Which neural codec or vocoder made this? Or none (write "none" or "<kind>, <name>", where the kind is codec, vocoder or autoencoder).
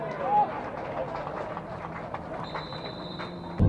none